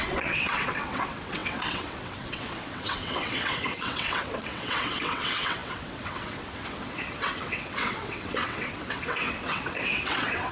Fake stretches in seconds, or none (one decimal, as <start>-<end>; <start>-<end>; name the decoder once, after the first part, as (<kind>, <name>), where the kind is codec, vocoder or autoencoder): 0.0-10.5 (vocoder, WaveNeXt)